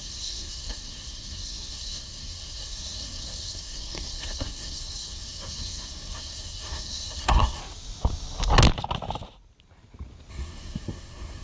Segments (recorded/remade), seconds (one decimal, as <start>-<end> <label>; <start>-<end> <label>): 0.0-7.6 remade; 7.6-10.3 recorded; 10.3-11.4 remade